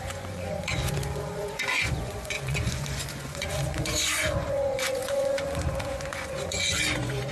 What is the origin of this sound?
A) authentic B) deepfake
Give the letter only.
B